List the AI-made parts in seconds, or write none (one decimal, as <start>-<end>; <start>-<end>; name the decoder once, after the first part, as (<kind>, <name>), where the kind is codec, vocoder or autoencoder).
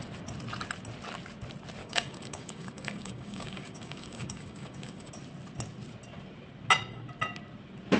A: 1.8-5.1 (codec, DAC)